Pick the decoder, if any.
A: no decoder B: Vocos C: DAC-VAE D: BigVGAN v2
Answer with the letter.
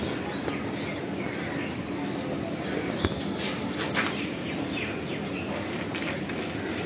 A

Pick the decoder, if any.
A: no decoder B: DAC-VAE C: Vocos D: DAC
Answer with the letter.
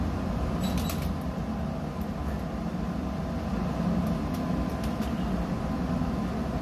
A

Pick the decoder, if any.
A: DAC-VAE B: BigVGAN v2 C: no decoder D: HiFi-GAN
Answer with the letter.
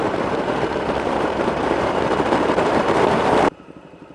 B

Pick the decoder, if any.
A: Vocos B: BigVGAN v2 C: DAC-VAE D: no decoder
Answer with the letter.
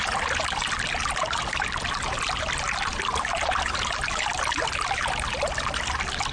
D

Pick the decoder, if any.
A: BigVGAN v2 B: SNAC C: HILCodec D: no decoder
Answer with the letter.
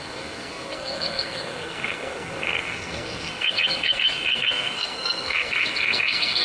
B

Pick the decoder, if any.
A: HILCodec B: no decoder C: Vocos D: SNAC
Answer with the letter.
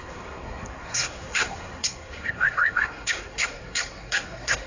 D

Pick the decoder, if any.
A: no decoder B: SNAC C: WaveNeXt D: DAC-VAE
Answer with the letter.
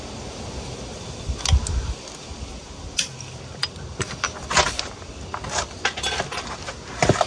A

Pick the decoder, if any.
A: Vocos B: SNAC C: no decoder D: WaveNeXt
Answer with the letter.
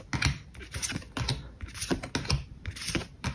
C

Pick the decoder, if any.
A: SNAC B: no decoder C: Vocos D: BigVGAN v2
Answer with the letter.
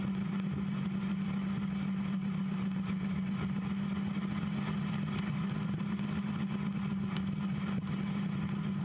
B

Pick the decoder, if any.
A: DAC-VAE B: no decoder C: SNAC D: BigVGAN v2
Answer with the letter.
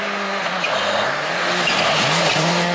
B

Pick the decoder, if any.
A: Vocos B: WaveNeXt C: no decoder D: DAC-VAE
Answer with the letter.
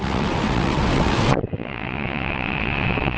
B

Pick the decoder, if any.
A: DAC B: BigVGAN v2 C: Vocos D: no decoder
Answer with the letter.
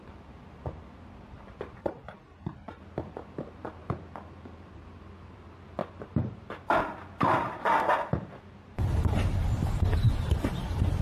B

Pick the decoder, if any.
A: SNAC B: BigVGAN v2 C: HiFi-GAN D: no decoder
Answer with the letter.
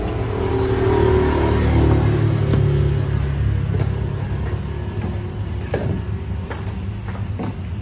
D